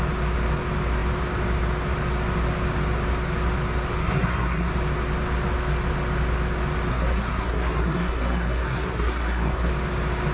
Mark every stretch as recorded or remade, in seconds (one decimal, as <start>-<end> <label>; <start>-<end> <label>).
0.0-4.0 recorded; 4.0-4.7 remade; 4.7-6.9 recorded; 6.9-9.7 remade; 9.7-10.3 recorded